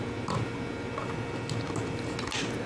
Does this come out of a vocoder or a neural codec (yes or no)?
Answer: no